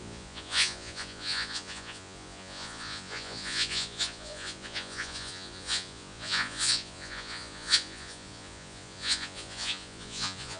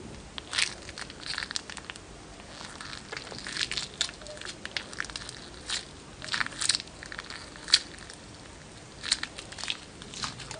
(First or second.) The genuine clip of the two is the second